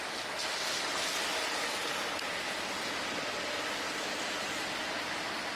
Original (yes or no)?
yes